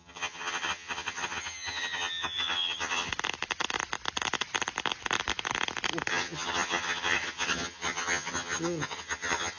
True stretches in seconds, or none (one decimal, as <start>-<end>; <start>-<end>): 3.1-6.1

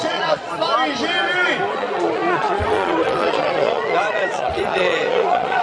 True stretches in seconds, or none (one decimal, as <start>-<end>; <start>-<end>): 0.5-1.7

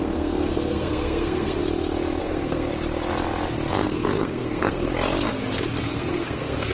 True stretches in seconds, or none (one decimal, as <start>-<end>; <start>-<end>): 1.6-2.2; 2.7-3.7; 4.9-5.8